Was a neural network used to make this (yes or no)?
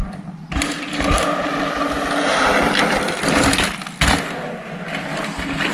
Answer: no